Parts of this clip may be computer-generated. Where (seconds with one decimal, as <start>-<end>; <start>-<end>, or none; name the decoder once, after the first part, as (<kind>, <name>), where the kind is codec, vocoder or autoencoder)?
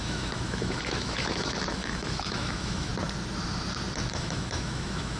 0.0-2.9 (autoencoder, DAC-VAE); 4.1-5.2